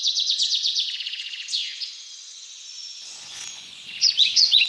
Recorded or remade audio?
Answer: remade